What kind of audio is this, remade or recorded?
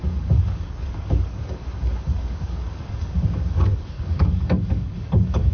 remade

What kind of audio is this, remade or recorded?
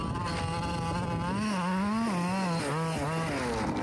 recorded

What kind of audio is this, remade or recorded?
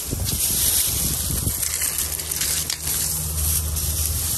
recorded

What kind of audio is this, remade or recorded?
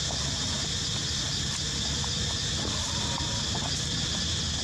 recorded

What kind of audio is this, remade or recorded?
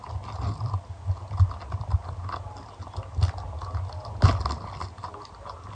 recorded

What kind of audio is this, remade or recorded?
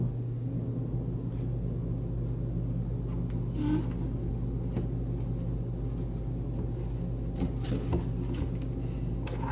recorded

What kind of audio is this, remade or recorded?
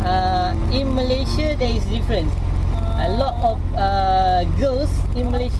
recorded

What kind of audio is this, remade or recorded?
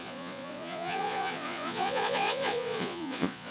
remade